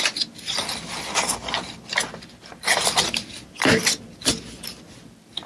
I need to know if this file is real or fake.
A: real